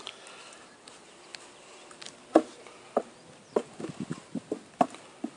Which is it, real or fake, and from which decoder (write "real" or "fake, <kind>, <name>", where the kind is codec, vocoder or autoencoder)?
real